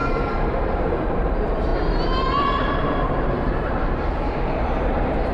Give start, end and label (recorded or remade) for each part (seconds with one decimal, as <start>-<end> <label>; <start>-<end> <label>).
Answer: 0.0-5.3 remade